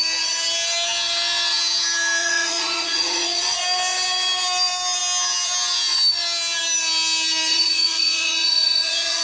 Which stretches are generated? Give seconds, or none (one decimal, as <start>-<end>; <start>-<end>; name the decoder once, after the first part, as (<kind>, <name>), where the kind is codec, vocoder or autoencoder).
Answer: 2.2-3.6 (vocoder, Vocos); 7.5-9.2